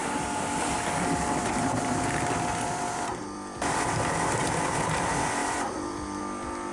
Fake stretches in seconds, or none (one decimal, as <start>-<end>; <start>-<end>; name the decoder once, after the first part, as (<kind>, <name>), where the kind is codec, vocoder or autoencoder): 0.0-4.0 (vocoder, BigVGAN v2); 5.4-6.2